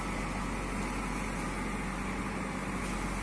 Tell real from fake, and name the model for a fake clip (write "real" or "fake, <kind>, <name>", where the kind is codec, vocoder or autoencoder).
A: real